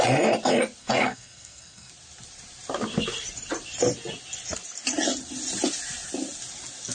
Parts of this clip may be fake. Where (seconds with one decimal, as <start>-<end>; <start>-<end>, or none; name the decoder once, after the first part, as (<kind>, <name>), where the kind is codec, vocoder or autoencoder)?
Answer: 0.8-1.9 (codec, SNAC)

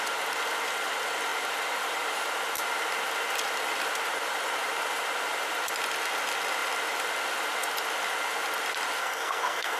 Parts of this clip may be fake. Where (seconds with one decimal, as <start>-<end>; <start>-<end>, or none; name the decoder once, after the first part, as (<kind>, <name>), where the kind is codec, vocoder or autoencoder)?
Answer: 9.0-9.8 (codec, SNAC)

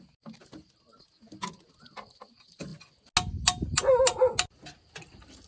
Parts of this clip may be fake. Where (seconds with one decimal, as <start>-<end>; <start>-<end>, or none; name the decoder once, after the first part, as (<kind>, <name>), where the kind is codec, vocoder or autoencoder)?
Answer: none

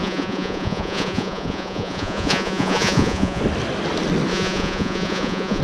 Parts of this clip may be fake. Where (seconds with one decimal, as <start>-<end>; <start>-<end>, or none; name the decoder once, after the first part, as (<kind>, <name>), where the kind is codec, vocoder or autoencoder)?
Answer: 0.0-3.4 (vocoder, Vocos); 4.3-5.6